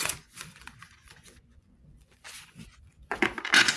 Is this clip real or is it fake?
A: fake